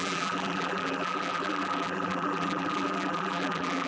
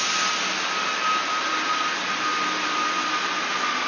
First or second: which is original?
second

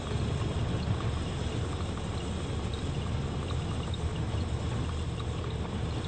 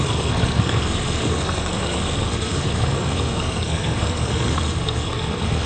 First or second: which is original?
first